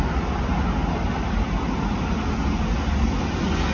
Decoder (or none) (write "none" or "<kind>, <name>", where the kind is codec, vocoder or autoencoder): none